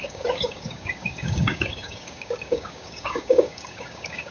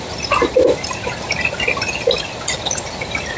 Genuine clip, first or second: second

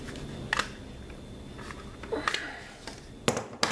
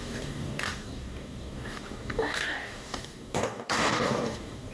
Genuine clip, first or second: first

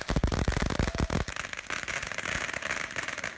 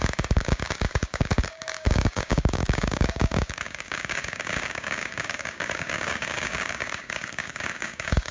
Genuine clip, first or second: first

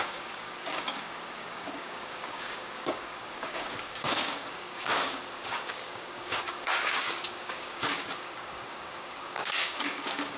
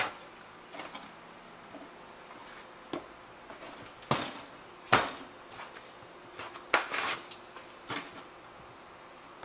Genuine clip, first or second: second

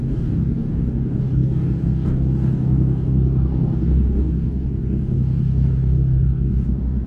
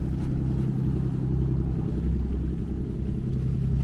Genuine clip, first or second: second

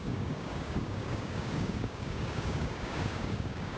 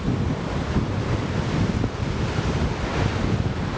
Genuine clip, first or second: second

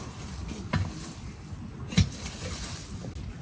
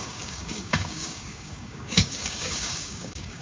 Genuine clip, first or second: first